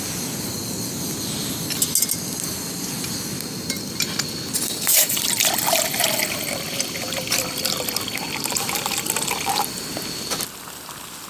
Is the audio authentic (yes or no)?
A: yes